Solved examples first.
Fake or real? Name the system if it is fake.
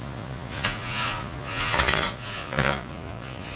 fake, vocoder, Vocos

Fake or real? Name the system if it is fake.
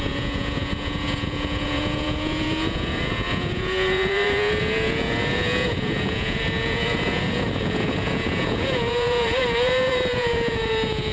fake, vocoder, Vocos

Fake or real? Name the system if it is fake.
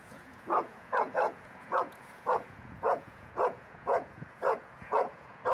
fake, vocoder, Vocos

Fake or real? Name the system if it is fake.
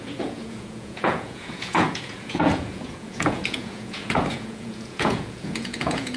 fake, vocoder, Vocos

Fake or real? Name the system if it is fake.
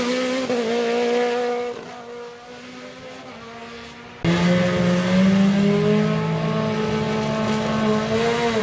real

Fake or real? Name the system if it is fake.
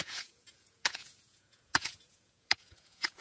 fake, vocoder, Vocos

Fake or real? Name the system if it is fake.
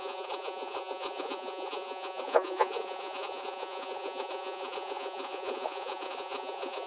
fake, vocoder, Vocos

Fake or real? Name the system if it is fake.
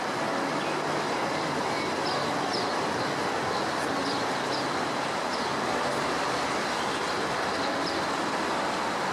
real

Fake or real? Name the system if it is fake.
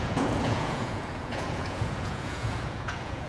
fake, vocoder, Vocos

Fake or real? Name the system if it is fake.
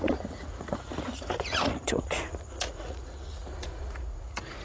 fake, vocoder, Vocos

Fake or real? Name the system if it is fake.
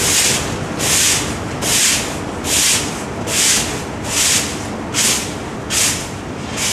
real